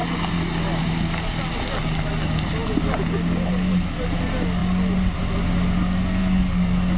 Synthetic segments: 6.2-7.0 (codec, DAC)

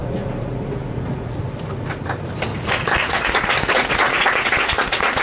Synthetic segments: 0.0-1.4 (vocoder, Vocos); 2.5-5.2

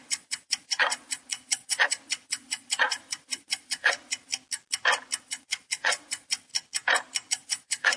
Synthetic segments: 0.0-4.3 (vocoder, Vocos); 5.2-6.5; 7.3-8.0

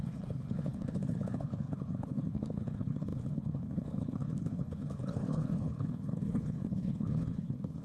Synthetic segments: 0.0-7.8 (codec, HILCodec)